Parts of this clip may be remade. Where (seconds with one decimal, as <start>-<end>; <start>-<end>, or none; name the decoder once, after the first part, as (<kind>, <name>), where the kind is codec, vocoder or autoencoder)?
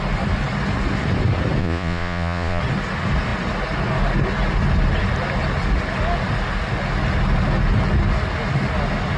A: 1.6-2.6 (vocoder, Vocos)